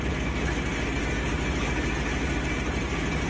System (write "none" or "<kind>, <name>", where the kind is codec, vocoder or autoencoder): none